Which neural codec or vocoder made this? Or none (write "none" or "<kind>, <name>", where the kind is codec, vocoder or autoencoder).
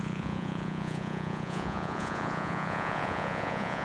vocoder, Vocos